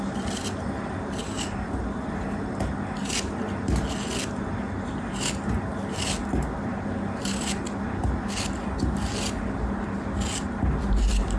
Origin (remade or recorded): recorded